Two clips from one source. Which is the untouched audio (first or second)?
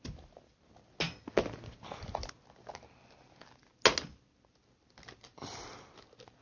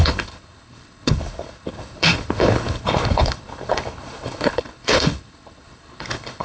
first